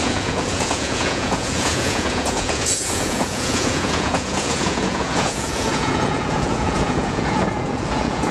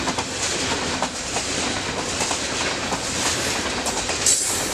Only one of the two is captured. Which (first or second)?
second